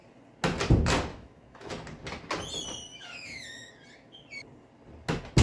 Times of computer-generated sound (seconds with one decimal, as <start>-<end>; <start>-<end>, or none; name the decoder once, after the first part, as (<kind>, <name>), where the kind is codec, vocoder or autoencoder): 1.1-1.7 (autoencoder, DAC-VAE); 2.9-3.7